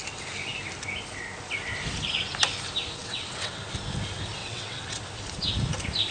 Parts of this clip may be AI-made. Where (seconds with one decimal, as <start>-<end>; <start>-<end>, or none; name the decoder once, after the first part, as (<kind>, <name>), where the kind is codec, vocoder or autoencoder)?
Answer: 3.0-3.6 (vocoder, WaveNeXt); 4.4-5.0